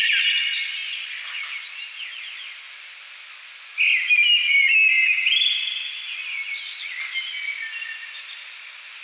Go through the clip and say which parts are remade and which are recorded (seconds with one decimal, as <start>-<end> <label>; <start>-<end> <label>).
0.0-9.0 recorded